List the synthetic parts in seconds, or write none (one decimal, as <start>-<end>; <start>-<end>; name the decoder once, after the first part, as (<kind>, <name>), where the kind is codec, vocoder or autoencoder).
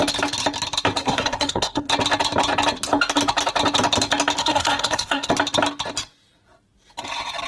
1.0-1.9 (codec, SNAC); 4.4-5.3